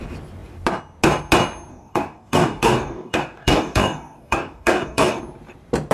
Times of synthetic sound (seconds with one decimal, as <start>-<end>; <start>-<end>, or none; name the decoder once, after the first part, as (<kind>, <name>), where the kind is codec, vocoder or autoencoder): 1.7-5.2 (codec, DAC)